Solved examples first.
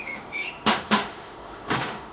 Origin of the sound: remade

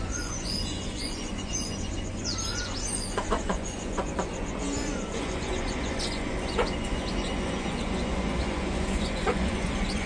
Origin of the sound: remade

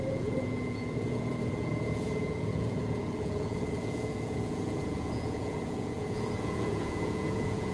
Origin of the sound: remade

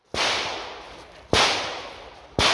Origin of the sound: recorded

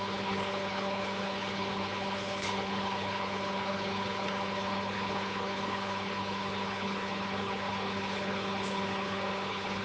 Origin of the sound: remade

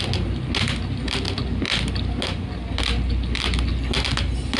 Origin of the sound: recorded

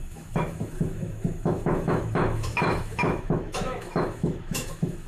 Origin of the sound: remade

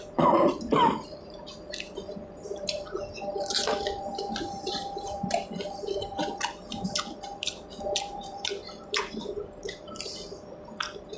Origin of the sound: remade